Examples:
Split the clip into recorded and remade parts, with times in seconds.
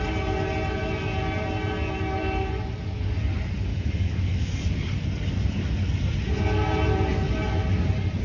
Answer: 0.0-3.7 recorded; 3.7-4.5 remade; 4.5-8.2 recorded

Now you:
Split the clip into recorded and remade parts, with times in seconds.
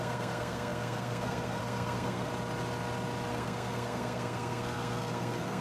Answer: 0.0-2.3 remade; 2.3-3.3 recorded; 3.3-5.6 remade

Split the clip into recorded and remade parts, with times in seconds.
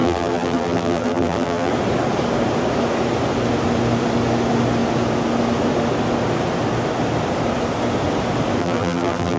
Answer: 0.0-1.7 remade; 1.7-8.6 recorded; 8.6-9.4 remade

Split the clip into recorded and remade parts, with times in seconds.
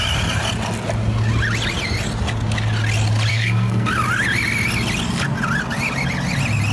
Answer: 0.0-3.3 recorded; 3.3-3.9 remade; 3.9-6.7 recorded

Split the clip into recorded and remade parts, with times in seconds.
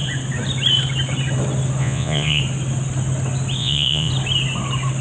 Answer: 0.0-1.8 recorded; 1.8-2.4 remade; 2.4-3.6 recorded; 3.6-4.1 remade; 4.1-5.0 recorded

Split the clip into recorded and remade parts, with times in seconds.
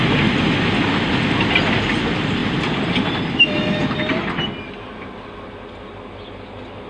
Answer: 0.0-6.9 recorded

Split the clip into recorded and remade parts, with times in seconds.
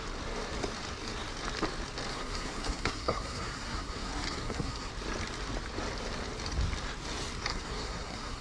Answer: 0.0-2.1 recorded; 2.1-4.9 remade; 4.9-7.5 recorded; 7.5-8.4 remade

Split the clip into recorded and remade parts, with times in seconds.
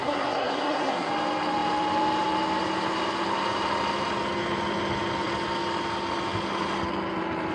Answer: 0.0-1.1 remade; 1.1-7.5 recorded